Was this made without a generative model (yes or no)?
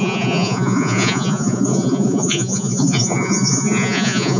no